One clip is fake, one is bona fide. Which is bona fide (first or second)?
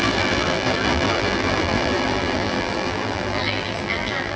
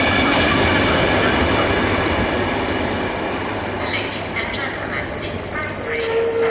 second